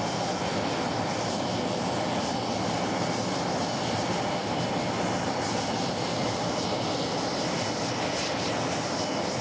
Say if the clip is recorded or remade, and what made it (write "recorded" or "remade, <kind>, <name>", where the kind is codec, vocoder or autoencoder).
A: recorded